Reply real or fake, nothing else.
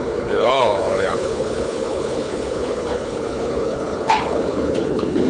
fake